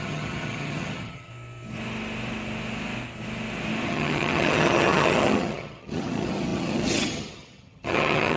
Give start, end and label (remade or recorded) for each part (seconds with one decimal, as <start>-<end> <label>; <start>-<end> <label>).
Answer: 0.0-1.3 remade; 1.3-3.9 recorded; 3.9-8.4 remade

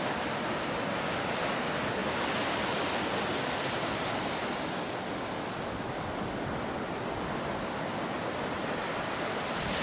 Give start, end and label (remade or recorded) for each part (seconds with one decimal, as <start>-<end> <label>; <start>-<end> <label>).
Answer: 0.0-9.8 recorded

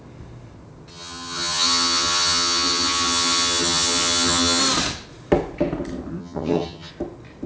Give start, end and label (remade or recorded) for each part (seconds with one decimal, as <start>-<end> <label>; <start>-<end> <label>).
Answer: 0.0-0.9 recorded; 0.9-4.6 remade; 4.6-6.2 recorded; 6.2-6.9 remade; 6.9-7.5 recorded

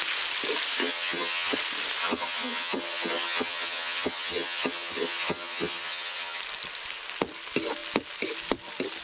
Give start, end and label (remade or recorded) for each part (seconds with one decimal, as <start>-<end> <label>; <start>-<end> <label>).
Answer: 0.0-0.8 recorded; 0.8-1.6 remade; 1.6-2.0 recorded; 2.0-6.4 remade; 6.4-9.0 recorded